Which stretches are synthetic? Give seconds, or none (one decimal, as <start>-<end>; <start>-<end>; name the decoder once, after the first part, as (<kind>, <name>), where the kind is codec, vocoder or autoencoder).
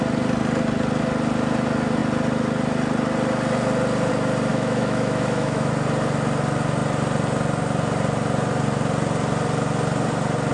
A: 4.5-5.7 (autoencoder, DAC-VAE)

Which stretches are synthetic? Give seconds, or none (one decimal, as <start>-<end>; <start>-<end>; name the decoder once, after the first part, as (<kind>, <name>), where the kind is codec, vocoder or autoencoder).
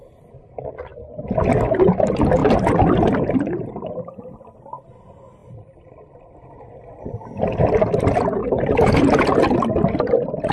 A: 2.4-4.4 (vocoder, BigVGAN v2); 8.4-9.2